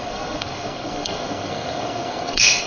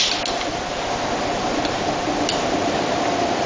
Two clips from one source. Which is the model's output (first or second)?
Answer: first